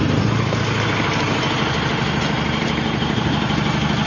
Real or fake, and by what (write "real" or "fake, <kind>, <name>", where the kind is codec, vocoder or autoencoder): real